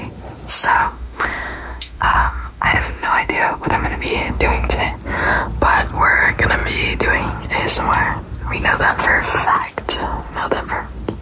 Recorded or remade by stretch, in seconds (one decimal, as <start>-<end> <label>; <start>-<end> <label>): 0.0-0.8 recorded; 0.8-4.8 remade; 4.8-11.2 recorded